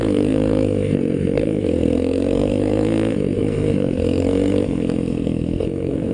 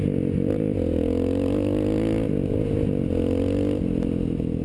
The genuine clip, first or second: second